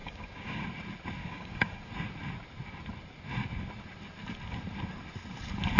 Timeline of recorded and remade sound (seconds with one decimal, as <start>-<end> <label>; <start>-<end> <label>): 0.0-0.6 remade; 0.6-1.2 recorded; 1.2-1.9 remade; 1.9-5.8 recorded